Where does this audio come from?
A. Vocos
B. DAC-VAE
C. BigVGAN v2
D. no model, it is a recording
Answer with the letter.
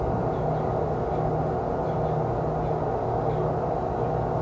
D